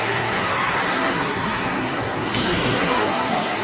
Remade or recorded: remade